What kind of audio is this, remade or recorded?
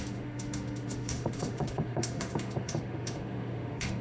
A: remade